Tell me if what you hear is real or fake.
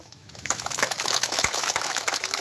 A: fake